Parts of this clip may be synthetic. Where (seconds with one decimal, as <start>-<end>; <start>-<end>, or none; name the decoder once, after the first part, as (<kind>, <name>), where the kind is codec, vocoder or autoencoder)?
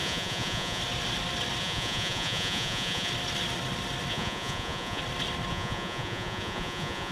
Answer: 0.0-0.8 (vocoder, Vocos); 1.6-3.1; 4.1-5.0; 5.5-7.1